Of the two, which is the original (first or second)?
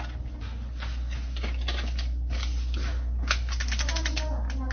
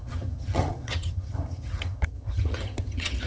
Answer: first